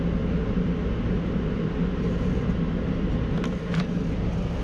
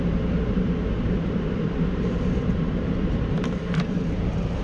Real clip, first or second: first